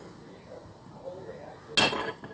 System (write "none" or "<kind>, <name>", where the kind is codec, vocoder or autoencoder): none